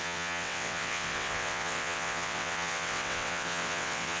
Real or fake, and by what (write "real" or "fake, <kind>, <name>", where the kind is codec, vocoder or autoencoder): fake, vocoder, WaveNeXt